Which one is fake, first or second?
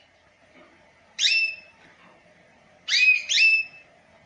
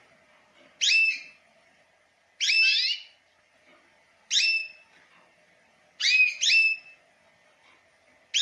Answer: first